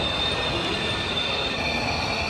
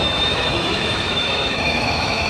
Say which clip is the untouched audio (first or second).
first